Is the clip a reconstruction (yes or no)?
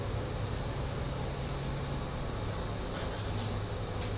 no